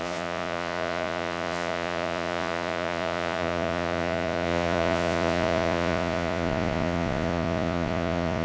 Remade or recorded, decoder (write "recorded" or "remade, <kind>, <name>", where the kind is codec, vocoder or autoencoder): remade, vocoder, Vocos